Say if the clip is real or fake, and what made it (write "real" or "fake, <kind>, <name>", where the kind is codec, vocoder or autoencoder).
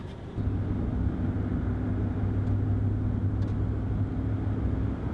real